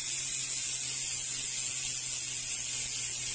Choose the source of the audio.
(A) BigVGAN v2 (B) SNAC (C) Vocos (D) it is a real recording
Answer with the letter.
D